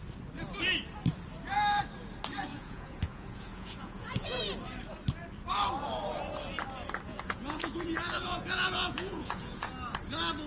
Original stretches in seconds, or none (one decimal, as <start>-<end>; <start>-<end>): 0.0-2.5; 4.4-7.1; 9.7-10.5